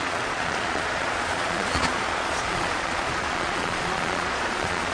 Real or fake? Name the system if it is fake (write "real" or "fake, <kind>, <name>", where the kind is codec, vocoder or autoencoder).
fake, vocoder, Vocos